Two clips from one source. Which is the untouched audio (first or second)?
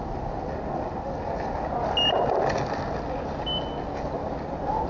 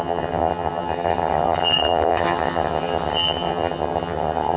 first